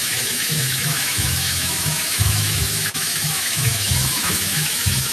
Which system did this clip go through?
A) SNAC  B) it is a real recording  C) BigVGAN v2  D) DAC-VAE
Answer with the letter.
D